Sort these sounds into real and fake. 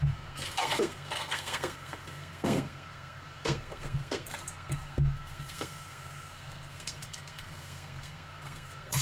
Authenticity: fake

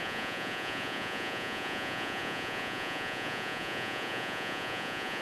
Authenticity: fake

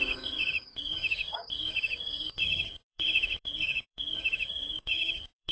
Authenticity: fake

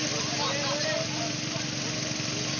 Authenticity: real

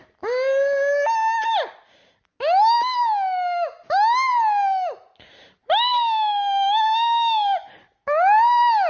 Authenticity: real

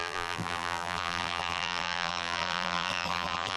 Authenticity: fake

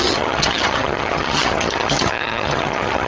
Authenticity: fake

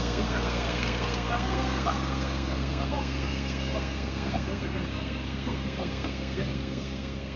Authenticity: fake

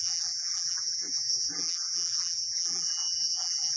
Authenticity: fake